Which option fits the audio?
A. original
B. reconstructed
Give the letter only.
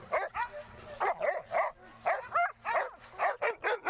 A